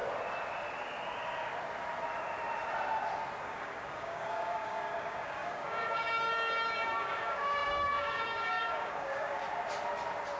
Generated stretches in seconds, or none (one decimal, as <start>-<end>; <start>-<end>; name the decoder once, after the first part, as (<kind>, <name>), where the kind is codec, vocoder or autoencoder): 3.4-9.4 (codec, DAC)